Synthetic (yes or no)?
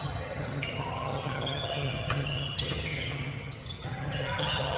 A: yes